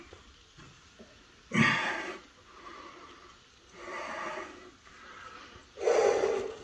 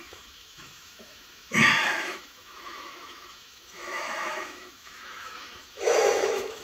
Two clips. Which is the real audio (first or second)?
first